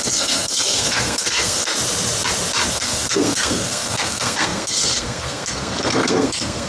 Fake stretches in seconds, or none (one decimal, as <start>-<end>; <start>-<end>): 0.0-1.7; 2.7-6.7